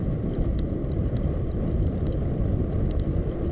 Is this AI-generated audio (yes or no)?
no